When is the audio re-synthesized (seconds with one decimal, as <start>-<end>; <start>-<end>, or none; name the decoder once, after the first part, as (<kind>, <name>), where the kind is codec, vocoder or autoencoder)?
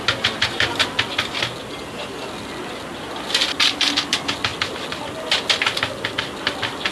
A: none